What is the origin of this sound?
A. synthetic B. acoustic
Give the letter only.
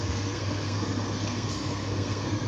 A